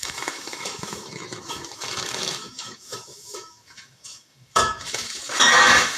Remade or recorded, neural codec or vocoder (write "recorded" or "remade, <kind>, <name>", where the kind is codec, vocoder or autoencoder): remade, autoencoder, DAC-VAE